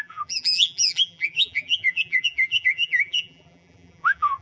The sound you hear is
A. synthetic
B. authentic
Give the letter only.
A